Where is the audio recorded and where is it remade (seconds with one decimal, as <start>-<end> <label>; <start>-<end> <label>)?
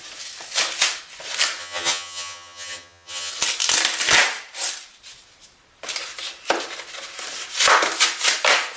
0.0-1.6 recorded; 1.6-3.3 remade; 3.3-8.8 recorded